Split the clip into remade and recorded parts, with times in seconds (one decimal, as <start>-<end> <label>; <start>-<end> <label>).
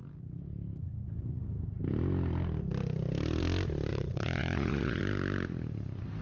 0.0-3.9 recorded; 3.9-5.0 remade; 5.0-6.2 recorded